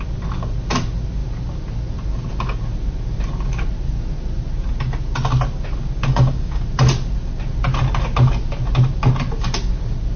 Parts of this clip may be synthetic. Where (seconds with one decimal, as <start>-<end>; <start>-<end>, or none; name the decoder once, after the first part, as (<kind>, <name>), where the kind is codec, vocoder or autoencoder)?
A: 6.1-6.6 (codec, DAC)